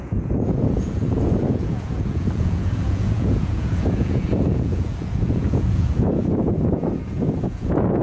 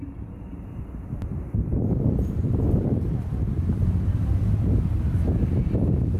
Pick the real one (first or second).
second